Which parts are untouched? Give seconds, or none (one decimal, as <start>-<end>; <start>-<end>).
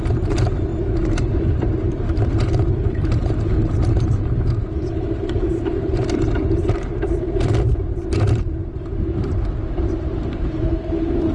0.7-1.3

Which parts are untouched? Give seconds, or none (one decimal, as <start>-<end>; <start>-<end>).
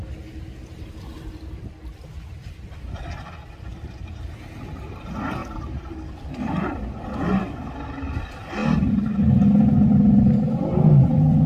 0.0-3.7; 4.4-5.4; 7.4-11.5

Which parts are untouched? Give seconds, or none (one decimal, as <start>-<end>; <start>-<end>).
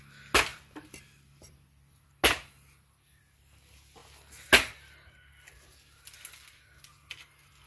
0.0-0.5; 2.1-7.7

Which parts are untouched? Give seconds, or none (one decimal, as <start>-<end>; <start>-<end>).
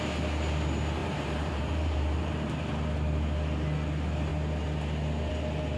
0.0-1.0; 2.5-5.8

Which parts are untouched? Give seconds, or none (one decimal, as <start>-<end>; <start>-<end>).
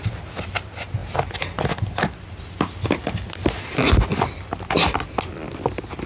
0.0-6.1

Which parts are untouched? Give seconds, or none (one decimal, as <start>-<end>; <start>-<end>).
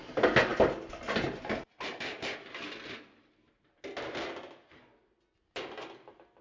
0.0-6.4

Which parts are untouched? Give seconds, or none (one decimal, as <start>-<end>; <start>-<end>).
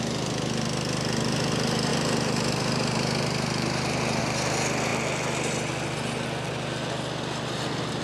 0.0-1.9; 4.2-8.0